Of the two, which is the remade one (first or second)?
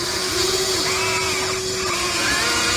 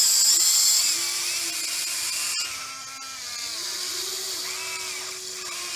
first